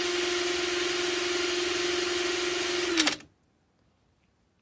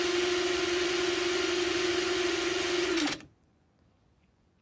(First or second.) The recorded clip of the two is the first